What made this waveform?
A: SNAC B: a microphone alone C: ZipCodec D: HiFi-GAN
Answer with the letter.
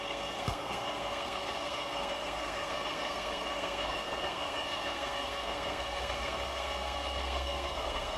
A